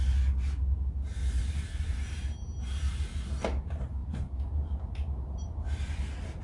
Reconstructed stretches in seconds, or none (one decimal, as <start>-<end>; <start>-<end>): 1.2-2.2